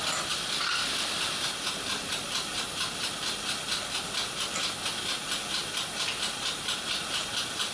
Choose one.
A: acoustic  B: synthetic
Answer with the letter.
A